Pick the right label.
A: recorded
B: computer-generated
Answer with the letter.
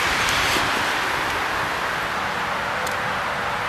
A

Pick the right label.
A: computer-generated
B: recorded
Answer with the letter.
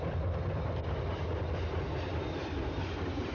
B